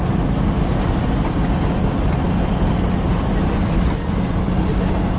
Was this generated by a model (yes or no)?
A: no